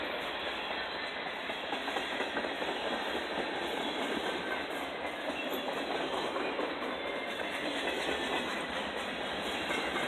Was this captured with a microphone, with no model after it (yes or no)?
yes